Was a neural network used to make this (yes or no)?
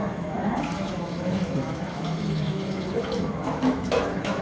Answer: yes